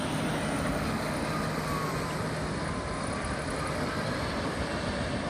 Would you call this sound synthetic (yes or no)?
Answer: no